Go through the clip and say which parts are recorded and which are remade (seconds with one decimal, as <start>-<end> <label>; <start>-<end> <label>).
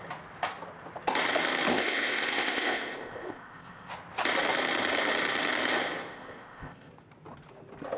0.0-1.7 recorded; 1.7-3.9 remade; 3.9-6.1 recorded; 6.1-6.9 remade; 6.9-8.0 recorded